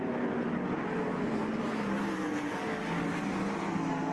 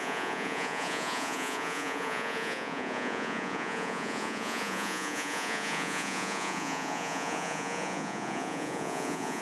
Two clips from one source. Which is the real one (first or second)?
first